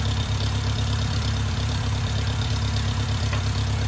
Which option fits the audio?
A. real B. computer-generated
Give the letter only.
B